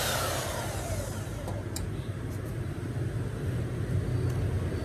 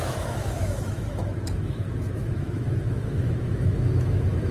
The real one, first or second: first